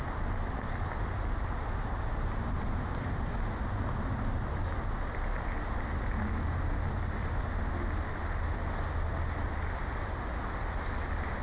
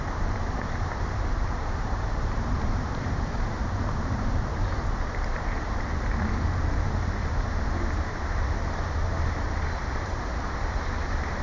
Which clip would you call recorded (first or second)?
first